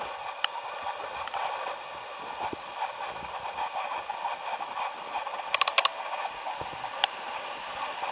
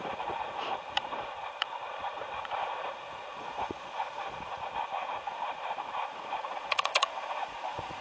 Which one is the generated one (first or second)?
second